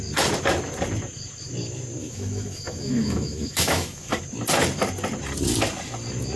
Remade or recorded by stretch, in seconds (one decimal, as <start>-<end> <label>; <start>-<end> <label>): 0.0-2.0 recorded; 2.0-4.2 remade; 4.2-6.4 recorded